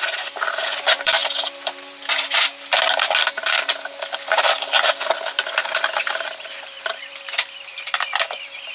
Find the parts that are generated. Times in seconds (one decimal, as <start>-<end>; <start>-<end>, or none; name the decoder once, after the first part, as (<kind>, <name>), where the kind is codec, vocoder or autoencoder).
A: 0.0-1.2 (vocoder, BigVGAN v2); 5.5-8.7